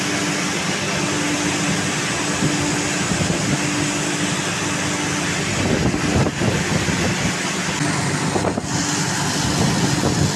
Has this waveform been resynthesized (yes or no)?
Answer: no